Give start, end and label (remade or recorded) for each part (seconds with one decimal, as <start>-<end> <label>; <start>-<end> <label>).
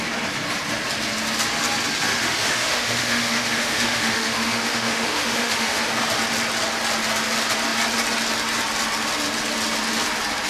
0.0-2.1 recorded; 2.1-5.8 remade; 5.8-10.5 recorded